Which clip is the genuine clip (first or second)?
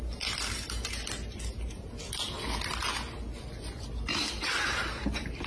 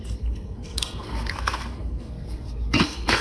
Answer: first